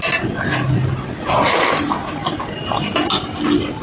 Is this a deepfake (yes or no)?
no